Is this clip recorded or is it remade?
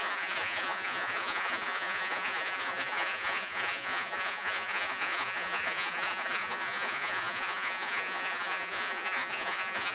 remade